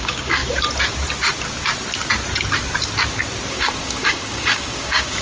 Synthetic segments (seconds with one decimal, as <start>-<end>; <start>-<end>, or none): 0.0-0.4; 3.5-5.2